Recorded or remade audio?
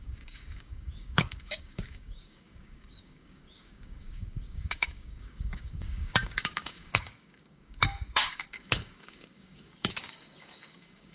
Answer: remade